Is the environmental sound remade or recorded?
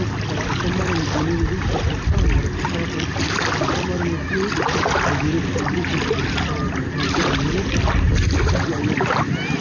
recorded